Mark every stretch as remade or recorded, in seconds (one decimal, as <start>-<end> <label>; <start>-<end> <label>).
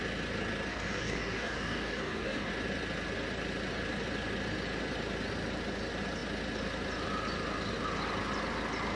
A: 0.0-0.7 recorded; 0.7-2.5 remade; 2.5-9.0 recorded